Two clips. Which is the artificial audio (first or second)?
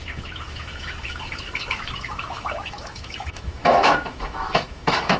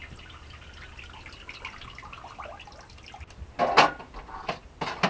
first